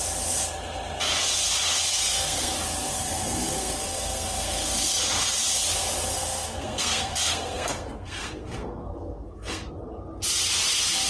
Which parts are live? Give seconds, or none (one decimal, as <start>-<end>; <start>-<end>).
0.0-1.9; 2.5-2.9; 5.0-6.1; 9.7-11.1